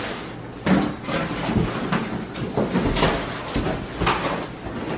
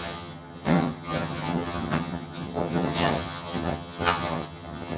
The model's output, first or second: second